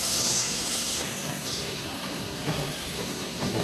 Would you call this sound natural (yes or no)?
no